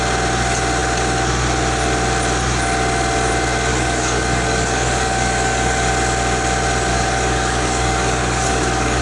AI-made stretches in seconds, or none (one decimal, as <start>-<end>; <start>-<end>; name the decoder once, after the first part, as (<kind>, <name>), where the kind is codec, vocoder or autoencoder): 3.7-5.9 (codec, DAC); 6.9-9.0